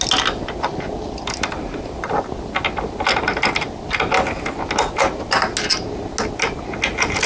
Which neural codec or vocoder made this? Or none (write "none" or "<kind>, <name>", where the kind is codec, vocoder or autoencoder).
none